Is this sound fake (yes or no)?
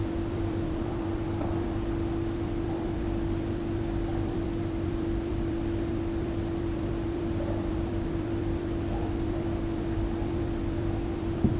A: yes